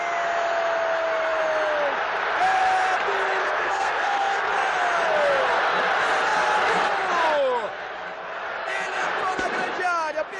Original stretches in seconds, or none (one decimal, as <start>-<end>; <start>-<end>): 0.0-3.4; 4.5-10.4